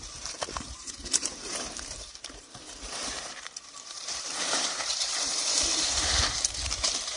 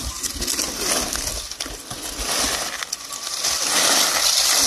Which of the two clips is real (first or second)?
second